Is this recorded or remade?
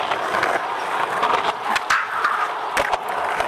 recorded